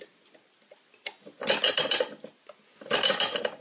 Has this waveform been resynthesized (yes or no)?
no